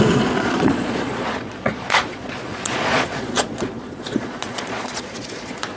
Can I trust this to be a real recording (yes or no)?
no